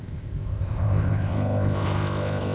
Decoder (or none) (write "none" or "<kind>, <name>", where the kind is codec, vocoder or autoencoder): codec, ZipCodec